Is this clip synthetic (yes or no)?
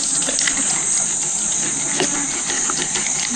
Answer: no